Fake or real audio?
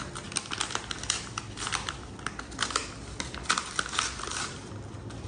real